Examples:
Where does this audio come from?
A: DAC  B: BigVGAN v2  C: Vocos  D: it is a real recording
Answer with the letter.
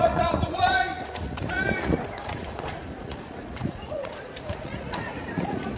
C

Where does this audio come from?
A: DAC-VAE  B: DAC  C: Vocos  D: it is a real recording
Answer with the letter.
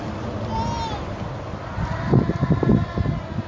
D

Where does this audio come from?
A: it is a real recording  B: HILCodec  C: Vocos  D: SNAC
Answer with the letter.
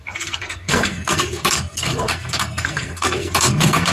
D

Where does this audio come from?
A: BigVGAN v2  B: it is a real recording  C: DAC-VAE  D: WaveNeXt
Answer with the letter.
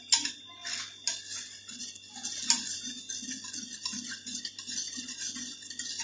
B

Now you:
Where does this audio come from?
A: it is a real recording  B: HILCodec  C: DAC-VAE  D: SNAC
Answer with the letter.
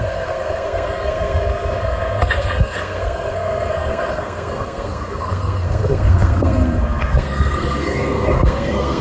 D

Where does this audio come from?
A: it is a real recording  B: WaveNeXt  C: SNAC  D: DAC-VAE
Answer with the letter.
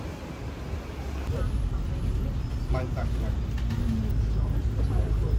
A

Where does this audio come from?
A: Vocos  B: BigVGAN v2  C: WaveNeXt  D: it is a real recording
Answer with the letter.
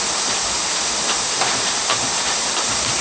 B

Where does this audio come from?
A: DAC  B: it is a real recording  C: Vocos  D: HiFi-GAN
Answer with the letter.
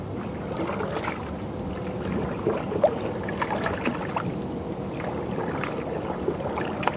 B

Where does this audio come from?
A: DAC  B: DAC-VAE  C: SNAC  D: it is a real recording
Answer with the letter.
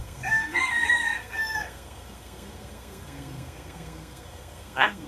C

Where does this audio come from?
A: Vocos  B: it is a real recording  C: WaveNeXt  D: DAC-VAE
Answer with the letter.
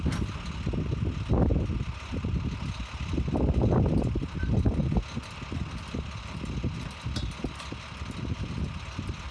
B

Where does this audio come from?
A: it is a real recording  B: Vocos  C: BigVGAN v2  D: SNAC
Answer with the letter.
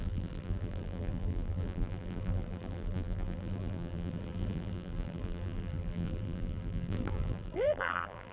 C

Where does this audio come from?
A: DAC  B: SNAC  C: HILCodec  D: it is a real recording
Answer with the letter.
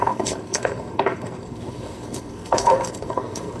B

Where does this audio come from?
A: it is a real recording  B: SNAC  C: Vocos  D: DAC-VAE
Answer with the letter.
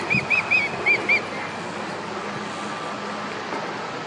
A